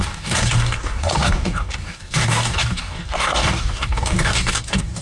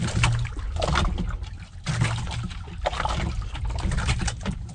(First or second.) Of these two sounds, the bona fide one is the second